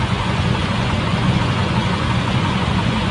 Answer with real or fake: fake